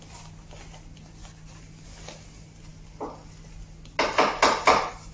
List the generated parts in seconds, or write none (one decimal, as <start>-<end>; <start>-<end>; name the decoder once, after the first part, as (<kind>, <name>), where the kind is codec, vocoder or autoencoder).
none